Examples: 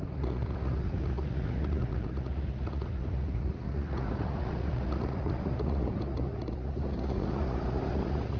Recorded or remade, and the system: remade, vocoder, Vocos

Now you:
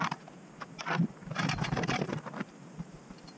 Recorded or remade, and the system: remade, vocoder, BigVGAN v2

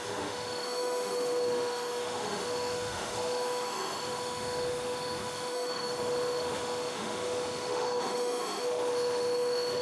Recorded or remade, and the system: remade, autoencoder, DAC-VAE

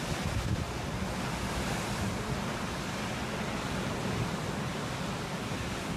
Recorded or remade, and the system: recorded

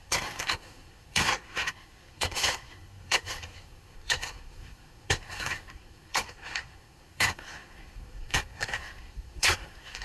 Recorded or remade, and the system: remade, codec, SNAC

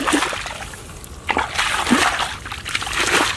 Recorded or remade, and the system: recorded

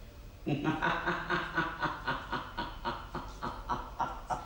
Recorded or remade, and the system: recorded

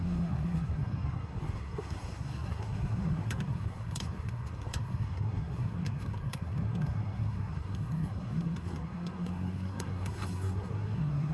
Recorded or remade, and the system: remade, codec, SNAC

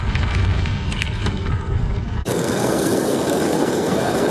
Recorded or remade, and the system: remade, codec, SNAC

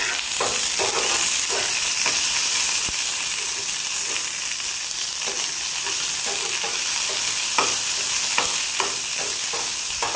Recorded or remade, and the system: recorded